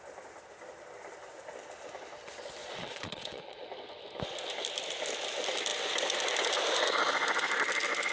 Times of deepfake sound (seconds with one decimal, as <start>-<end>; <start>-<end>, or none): 2.6-3.6